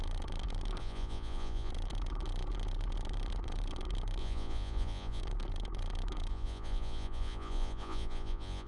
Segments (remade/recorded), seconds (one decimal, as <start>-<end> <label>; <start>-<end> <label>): 0.0-0.8 recorded; 0.8-1.7 remade; 1.7-4.2 recorded; 4.2-5.2 remade; 5.2-6.3 recorded; 6.3-8.7 remade